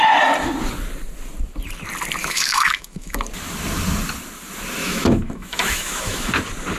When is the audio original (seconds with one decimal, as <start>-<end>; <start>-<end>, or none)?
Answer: 0.0-2.2; 3.2-4.8; 6.3-6.8